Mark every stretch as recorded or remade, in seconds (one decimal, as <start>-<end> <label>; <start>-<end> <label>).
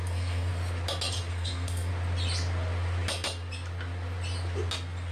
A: 0.0-0.5 remade; 0.5-1.3 recorded; 1.3-1.9 remade; 1.9-5.1 recorded